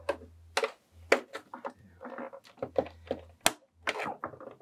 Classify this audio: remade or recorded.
recorded